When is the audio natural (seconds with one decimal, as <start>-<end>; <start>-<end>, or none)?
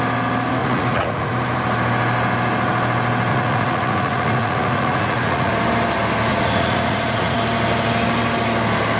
0.0-0.6; 1.3-3.3; 5.5-6.3; 7.4-9.0